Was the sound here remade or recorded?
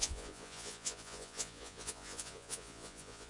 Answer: remade